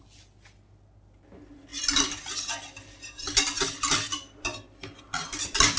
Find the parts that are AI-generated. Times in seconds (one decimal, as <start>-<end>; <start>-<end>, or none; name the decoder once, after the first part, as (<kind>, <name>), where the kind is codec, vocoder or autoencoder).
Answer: none